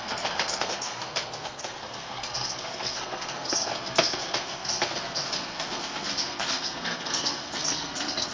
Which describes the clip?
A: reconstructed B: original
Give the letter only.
A